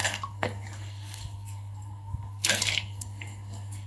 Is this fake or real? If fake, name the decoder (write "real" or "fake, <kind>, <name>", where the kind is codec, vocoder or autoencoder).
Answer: fake, codec, SNAC